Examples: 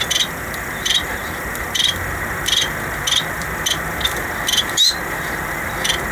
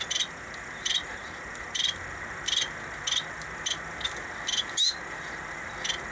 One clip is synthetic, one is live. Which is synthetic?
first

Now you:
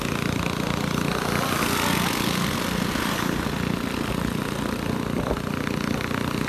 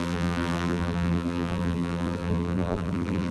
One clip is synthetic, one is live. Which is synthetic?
second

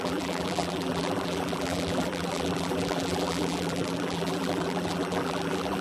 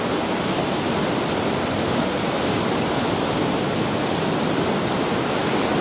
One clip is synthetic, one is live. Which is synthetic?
first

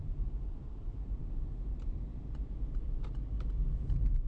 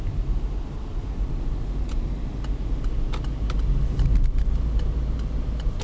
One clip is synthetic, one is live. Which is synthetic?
first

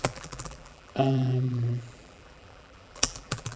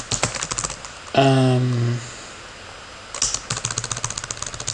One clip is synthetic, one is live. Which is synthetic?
first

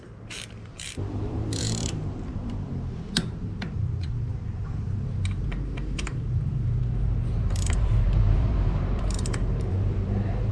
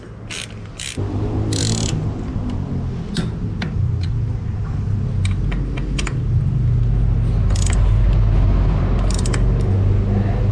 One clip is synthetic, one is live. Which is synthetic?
first